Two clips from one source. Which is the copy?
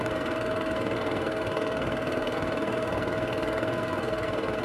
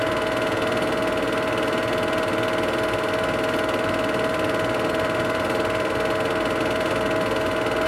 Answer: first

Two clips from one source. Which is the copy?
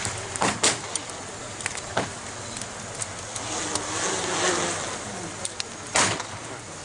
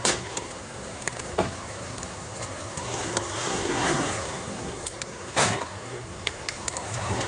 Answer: second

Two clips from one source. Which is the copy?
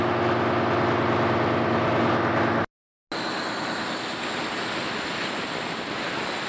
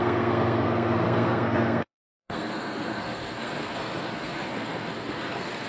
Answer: second